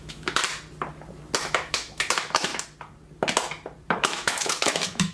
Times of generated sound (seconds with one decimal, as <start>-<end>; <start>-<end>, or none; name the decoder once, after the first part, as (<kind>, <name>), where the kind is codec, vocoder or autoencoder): 0.0-0.4 (autoencoder, DAC-VAE); 1.4-2.5; 3.9-5.1